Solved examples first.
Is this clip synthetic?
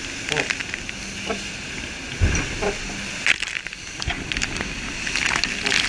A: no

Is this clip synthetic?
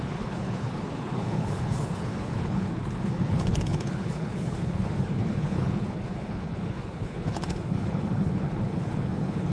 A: yes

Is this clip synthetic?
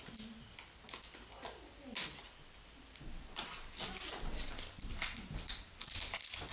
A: no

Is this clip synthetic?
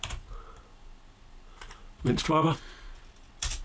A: no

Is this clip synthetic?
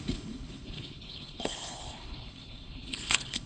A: yes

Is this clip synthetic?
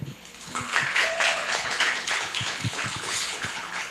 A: yes